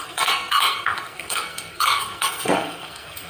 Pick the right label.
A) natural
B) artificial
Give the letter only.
B